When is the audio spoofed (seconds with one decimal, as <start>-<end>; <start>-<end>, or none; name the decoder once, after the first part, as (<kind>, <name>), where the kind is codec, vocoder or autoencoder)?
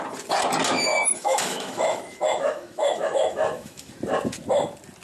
0.9-3.9 (autoencoder, DAC-VAE)